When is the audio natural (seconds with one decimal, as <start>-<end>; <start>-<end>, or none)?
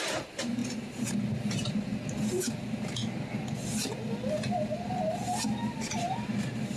1.9-2.6; 3.0-5.7